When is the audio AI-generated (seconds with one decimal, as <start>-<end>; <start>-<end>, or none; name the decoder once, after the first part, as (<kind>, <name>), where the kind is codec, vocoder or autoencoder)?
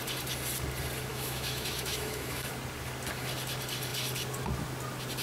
1.1-2.5 (autoencoder, DAC-VAE)